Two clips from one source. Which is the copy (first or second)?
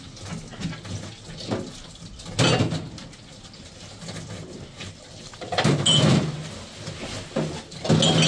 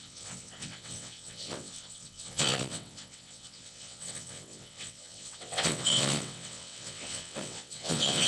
second